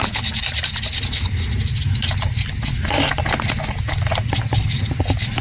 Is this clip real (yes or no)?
yes